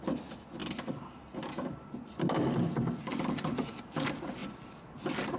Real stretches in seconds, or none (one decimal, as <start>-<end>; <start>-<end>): 0.0-0.6; 3.0-4.4